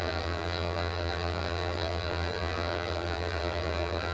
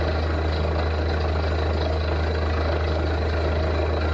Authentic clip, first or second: second